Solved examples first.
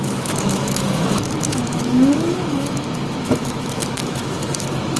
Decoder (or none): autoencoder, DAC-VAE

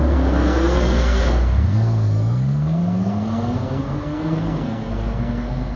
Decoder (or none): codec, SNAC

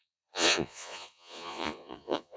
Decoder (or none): vocoder, Vocos